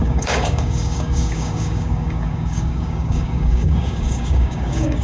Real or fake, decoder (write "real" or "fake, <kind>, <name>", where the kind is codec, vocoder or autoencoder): fake, codec, DAC